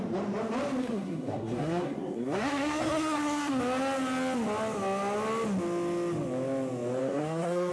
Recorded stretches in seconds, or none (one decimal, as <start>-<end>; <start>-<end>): 0.0-0.8; 3.6-7.0

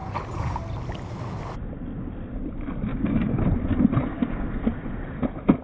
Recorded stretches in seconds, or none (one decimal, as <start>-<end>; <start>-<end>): 0.0-2.9; 3.4-4.1; 4.6-5.6

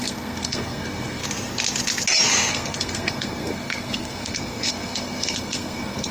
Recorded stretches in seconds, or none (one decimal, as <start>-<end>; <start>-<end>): 1.2-2.5

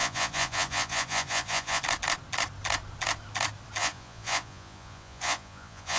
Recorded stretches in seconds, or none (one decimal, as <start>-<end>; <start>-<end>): 1.8-3.8

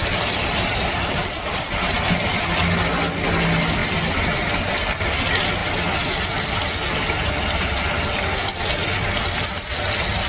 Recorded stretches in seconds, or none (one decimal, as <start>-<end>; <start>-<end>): 1.6-10.3

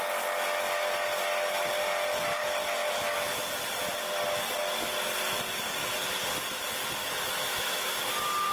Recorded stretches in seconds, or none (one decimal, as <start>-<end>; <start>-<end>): 0.0-2.4; 3.4-7.0; 8.0-8.5

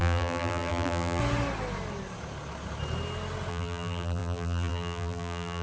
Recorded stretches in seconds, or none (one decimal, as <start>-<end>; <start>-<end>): 1.2-3.5

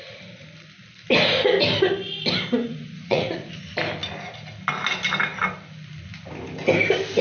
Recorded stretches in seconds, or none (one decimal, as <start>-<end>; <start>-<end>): 0.0-2.6; 3.6-7.2